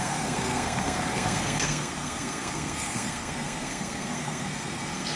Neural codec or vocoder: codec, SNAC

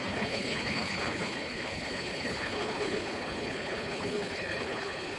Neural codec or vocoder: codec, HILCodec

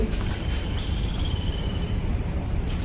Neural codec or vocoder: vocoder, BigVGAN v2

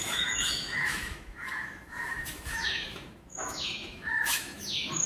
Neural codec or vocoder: autoencoder, DAC-VAE